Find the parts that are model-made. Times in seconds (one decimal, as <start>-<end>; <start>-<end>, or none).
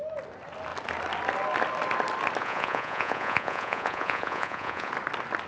2.4-4.9